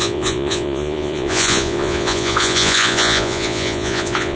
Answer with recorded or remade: remade